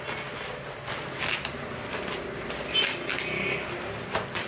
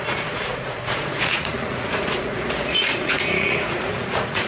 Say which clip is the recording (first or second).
first